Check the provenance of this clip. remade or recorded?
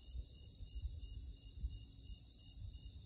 recorded